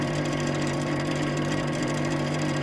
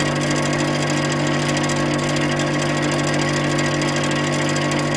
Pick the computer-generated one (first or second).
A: first